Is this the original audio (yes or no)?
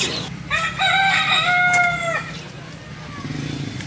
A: yes